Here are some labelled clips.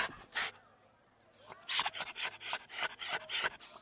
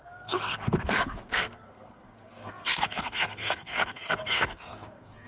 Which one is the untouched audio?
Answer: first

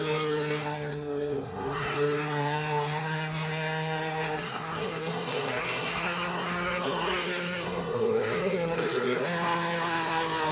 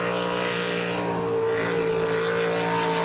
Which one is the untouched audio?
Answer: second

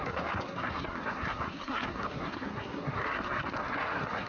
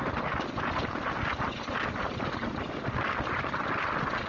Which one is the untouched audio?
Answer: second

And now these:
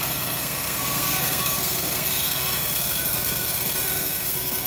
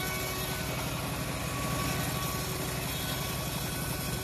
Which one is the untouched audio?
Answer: second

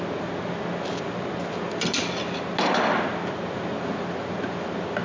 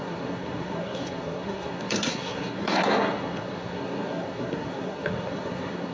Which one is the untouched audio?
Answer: first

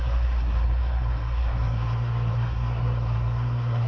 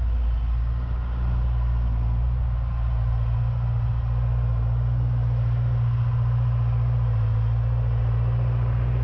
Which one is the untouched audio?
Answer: second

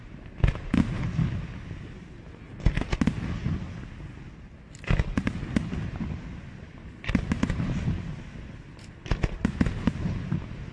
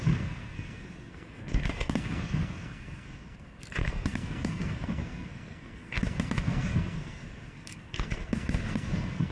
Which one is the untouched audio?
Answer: first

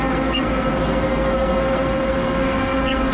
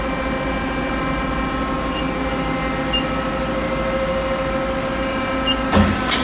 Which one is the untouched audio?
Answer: second